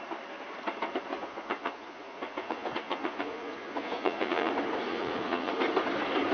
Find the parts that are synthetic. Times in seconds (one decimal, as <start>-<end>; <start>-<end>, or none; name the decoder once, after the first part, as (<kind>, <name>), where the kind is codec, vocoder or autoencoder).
1.1-4.5 (vocoder, Vocos); 4.9-5.5